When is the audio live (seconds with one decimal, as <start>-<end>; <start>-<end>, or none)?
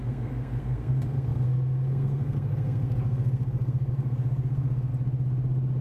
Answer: 4.9-5.8